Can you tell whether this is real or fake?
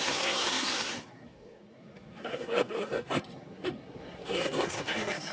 fake